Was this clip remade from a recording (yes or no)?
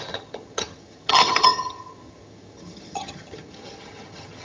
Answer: yes